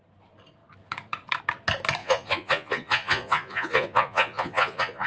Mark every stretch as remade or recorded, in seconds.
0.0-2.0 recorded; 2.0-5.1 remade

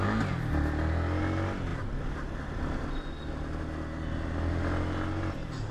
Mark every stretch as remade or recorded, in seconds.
0.0-1.7 recorded; 1.7-3.1 remade; 3.1-5.7 recorded